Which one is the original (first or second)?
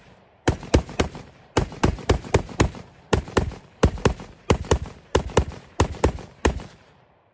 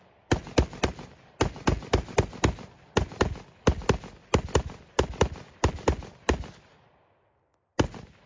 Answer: second